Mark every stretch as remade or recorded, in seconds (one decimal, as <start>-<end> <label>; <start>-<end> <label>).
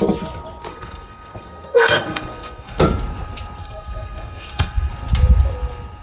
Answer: 0.0-0.7 recorded; 0.7-2.8 remade; 2.8-3.6 recorded; 3.6-4.9 remade; 4.9-6.0 recorded